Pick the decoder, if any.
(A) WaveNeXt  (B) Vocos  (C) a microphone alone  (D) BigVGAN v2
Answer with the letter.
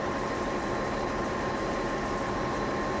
D